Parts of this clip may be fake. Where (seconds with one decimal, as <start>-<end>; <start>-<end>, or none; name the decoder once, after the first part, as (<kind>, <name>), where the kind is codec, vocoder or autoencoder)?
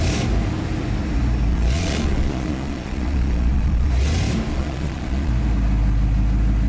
1.5-3.9 (vocoder, Vocos); 4.5-5.3